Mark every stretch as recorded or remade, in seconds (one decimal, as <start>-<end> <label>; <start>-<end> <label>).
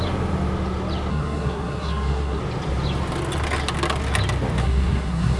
0.0-1.1 recorded; 1.1-2.4 remade; 2.4-4.6 recorded; 4.6-5.4 remade